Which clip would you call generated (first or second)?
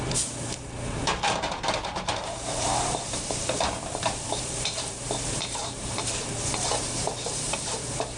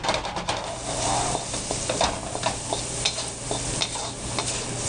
first